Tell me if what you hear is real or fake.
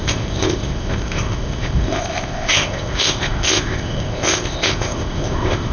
fake